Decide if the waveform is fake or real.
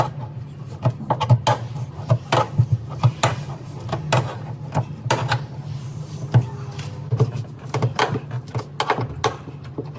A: real